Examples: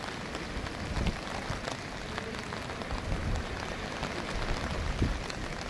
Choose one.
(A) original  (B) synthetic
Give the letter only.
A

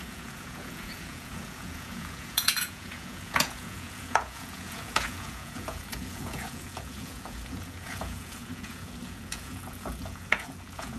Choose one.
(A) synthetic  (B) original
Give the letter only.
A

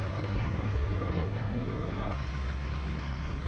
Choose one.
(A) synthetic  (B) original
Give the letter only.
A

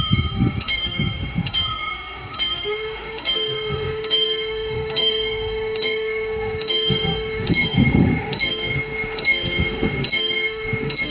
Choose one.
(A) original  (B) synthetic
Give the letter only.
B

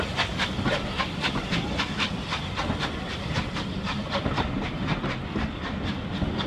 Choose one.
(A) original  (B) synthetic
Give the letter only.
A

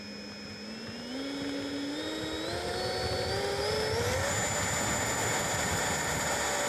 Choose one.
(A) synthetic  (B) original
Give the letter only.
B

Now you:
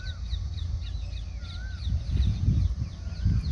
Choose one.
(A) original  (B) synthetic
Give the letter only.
A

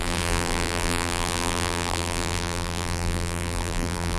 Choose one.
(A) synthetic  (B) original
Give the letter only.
A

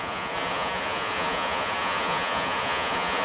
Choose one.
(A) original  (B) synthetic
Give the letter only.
B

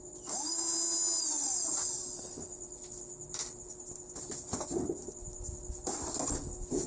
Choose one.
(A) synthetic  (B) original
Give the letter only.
B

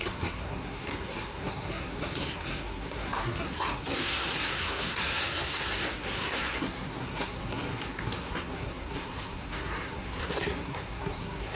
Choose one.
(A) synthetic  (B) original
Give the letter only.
A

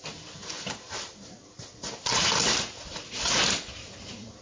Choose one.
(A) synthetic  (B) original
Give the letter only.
B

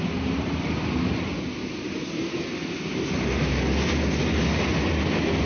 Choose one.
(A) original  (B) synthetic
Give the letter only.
A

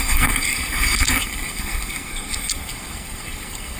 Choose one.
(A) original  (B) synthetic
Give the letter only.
B